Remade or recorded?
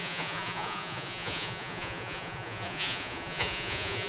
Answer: remade